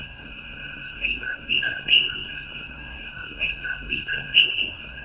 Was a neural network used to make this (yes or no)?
yes